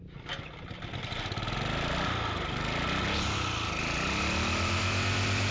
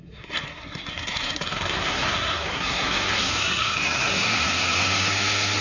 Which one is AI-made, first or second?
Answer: second